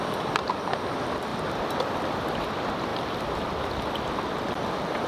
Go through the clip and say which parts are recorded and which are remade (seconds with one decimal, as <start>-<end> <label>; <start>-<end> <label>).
0.0-5.1 remade